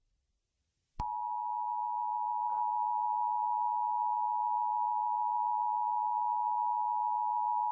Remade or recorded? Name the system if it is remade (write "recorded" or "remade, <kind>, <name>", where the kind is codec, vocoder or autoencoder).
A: recorded